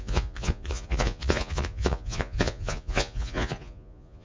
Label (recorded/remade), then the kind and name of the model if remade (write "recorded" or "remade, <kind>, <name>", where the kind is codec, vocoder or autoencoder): remade, vocoder, Vocos